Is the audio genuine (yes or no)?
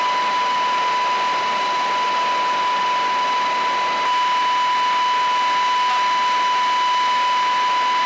yes